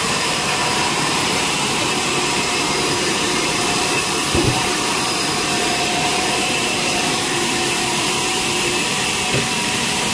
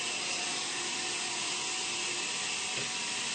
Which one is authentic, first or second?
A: second